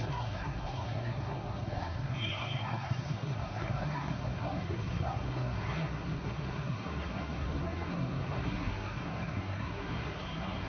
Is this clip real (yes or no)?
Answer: no